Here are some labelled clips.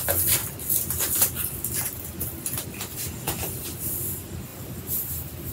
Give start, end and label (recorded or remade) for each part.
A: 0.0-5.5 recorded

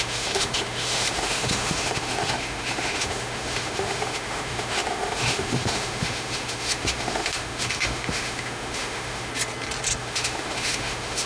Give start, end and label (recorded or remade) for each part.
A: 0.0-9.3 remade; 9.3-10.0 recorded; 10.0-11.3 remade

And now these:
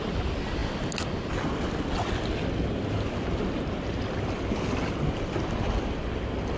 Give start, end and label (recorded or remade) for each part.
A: 0.0-6.6 recorded